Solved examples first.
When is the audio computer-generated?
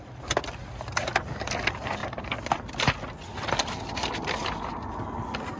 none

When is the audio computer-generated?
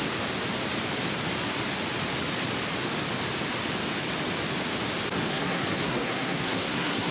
5.3-7.1 (codec, SNAC)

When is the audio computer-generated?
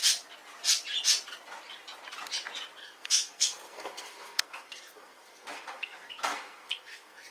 2.8-7.3 (codec, SNAC)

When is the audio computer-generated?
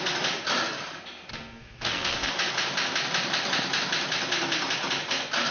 1.3-2.3 (codec, SNAC)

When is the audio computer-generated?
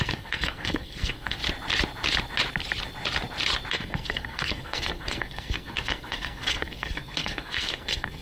0.0-1.4 (codec, SNAC); 3.7-8.2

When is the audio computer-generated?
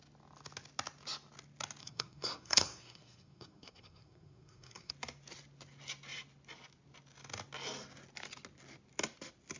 1.8-4.9 (codec, SNAC)